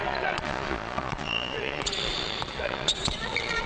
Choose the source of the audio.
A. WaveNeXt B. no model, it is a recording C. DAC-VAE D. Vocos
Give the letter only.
D